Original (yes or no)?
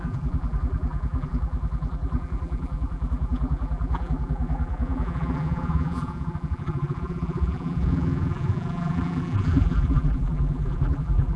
no